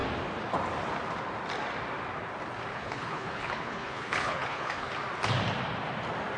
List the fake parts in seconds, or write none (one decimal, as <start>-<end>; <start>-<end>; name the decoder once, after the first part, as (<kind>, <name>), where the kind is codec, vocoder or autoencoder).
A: 2.7-4.9 (codec, HILCodec)